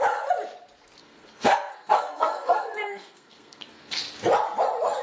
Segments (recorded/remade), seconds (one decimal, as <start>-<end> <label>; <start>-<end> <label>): 0.0-1.0 recorded; 1.0-4.0 remade; 4.0-5.0 recorded